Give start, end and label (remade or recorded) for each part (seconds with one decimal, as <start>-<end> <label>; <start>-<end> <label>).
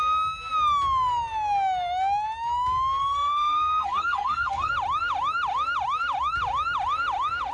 0.0-3.0 recorded; 3.0-4.7 remade; 4.7-7.5 recorded